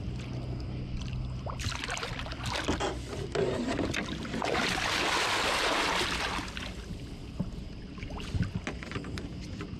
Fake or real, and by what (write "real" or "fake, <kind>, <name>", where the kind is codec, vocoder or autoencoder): real